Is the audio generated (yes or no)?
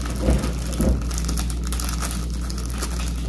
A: no